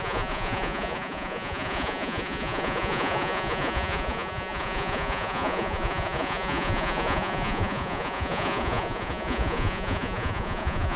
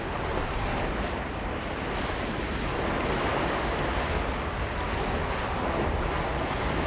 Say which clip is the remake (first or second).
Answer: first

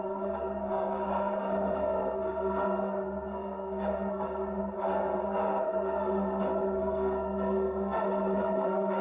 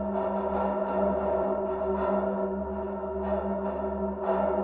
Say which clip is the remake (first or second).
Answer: first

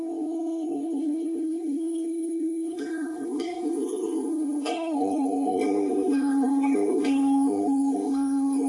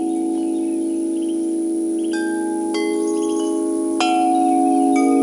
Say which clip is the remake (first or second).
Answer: first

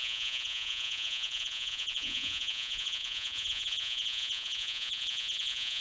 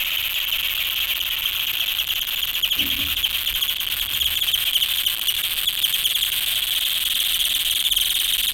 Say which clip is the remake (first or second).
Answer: first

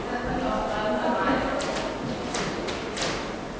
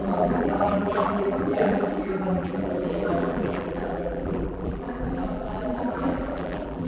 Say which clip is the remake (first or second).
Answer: second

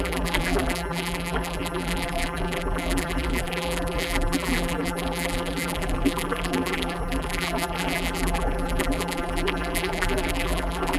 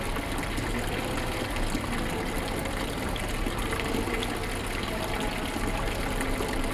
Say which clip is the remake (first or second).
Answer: first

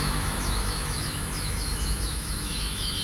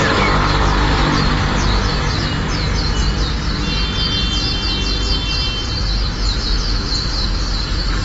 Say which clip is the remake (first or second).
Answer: first